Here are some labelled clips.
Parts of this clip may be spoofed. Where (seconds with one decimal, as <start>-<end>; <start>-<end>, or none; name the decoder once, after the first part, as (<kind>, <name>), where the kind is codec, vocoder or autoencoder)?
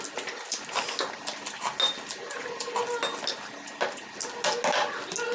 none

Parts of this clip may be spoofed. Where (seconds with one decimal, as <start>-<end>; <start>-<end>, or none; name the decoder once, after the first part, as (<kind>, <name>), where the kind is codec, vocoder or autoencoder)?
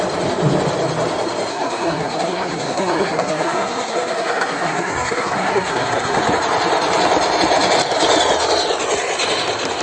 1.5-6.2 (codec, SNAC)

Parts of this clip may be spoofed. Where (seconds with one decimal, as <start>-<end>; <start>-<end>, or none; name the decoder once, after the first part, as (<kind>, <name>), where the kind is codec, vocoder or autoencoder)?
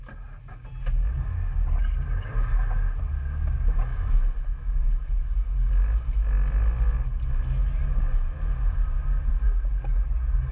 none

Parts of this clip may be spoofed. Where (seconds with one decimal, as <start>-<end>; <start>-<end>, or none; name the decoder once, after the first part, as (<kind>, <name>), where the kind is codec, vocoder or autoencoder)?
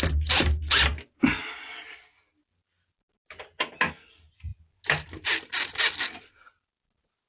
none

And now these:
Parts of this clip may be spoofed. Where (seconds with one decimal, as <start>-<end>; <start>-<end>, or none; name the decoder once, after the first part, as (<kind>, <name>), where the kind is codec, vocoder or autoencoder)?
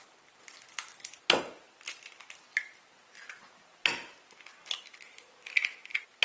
none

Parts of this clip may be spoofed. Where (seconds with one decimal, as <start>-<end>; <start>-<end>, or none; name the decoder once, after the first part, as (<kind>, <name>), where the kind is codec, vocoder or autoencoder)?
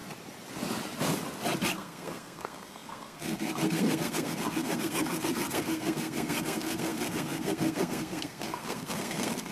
1.7-9.5 (codec, SNAC)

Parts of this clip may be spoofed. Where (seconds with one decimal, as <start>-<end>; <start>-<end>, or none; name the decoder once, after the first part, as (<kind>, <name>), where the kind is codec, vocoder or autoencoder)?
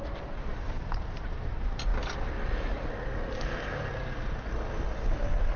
0.0-1.9 (vocoder, BigVGAN v2)